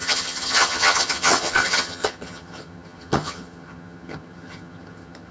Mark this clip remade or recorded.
remade